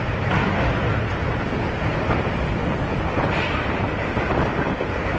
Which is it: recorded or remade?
recorded